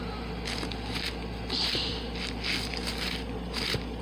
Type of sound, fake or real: real